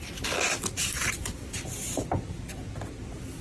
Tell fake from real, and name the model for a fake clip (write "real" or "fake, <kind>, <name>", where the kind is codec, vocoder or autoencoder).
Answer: real